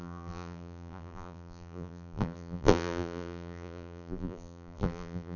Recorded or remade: remade